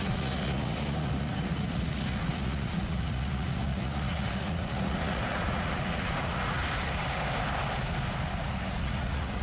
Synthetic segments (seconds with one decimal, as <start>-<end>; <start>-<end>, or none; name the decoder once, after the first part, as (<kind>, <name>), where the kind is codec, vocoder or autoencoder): 0.0-6.6 (vocoder, Vocos); 8.3-9.4